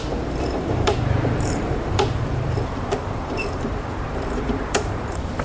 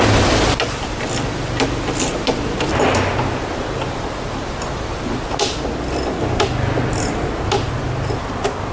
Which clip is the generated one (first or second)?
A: first